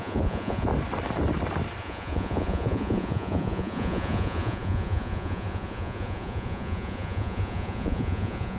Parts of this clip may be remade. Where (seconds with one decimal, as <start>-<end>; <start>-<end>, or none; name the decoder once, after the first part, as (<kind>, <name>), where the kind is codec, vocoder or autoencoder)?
0.0-0.7 (vocoder, Vocos); 1.8-8.6